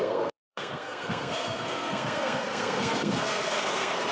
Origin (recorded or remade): remade